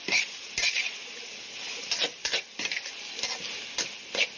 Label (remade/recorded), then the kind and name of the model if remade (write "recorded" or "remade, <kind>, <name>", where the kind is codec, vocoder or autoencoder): recorded